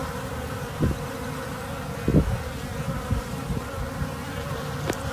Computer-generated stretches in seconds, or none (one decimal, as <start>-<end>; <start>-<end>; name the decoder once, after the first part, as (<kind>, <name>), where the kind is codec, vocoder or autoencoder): none